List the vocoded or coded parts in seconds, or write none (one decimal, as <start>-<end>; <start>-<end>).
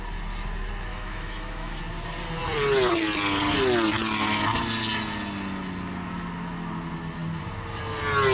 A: 0.9-1.8